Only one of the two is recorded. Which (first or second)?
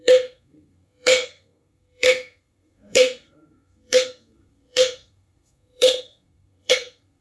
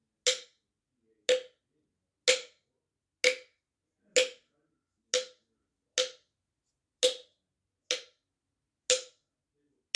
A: second